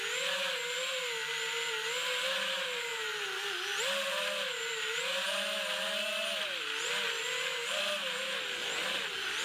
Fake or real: real